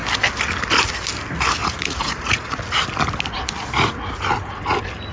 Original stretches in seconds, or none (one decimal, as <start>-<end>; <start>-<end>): 0.0-1.6; 2.6-5.1